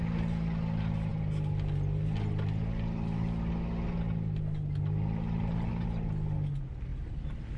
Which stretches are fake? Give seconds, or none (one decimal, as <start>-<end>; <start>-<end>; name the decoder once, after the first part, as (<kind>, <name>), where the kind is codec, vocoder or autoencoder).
none